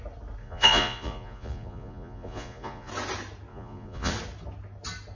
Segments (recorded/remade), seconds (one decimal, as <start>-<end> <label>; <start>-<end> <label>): 0.0-0.4 recorded; 0.4-2.9 remade; 2.9-3.5 recorded; 3.5-4.1 remade; 4.1-5.1 recorded